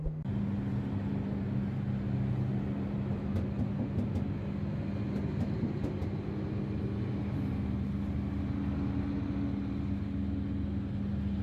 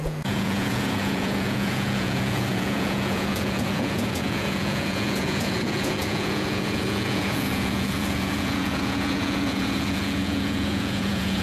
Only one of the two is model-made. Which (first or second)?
second